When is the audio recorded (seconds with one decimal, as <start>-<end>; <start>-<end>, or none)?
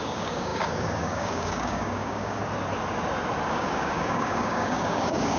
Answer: 2.4-3.5